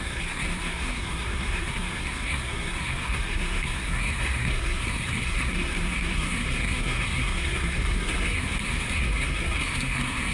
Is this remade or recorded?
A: remade